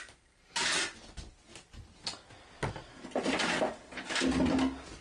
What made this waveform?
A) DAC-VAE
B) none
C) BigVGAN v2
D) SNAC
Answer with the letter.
B